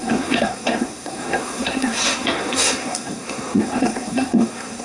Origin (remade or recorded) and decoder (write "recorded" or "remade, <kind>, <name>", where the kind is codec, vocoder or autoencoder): remade, codec, SNAC